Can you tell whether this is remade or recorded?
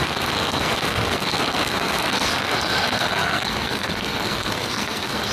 remade